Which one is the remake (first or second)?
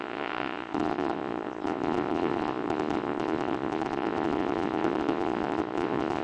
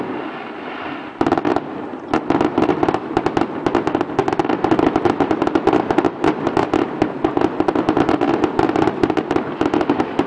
first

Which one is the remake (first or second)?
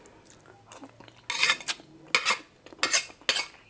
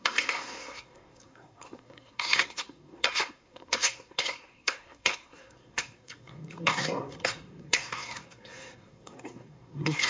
second